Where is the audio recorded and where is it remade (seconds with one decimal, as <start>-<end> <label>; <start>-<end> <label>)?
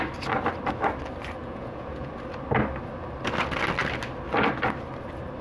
0.0-1.4 recorded; 1.4-2.1 remade; 2.1-5.4 recorded